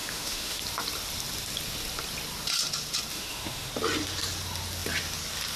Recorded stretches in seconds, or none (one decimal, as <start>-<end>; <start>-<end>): 0.6-3.1; 3.7-5.6